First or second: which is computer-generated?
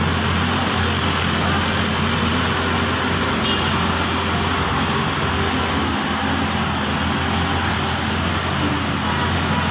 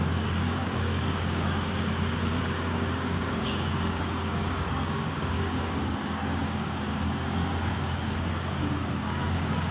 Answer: second